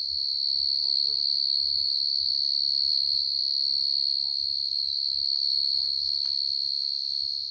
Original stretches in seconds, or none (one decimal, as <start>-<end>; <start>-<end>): 0.0-0.8; 2.3-2.9; 3.4-4.7; 6.2-7.5